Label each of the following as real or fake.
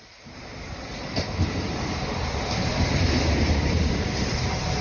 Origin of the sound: fake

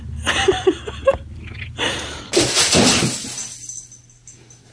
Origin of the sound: real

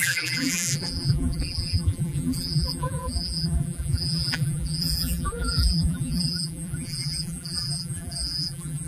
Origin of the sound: fake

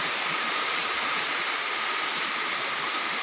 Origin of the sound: fake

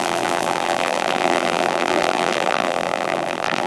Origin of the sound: fake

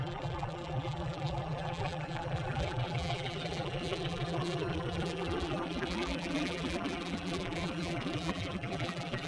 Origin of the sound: fake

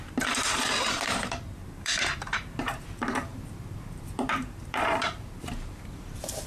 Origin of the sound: fake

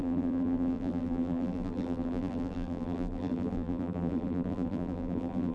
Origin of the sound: fake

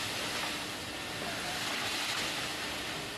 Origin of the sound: real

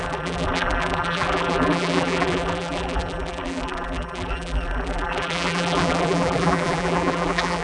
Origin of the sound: fake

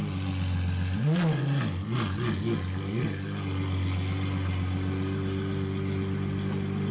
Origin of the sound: real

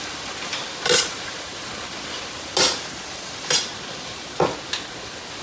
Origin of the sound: real